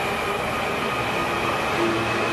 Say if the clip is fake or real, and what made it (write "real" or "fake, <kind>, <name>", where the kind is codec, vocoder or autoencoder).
real